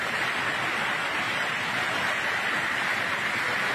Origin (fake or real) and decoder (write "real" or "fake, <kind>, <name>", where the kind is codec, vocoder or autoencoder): real